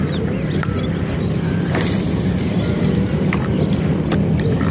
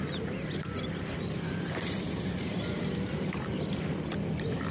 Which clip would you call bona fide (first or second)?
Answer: first